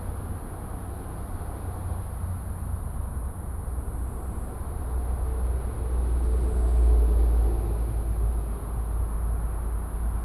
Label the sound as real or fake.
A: real